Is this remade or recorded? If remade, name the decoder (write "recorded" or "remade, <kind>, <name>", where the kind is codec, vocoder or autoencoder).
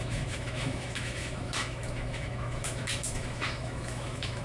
remade, autoencoder, DAC-VAE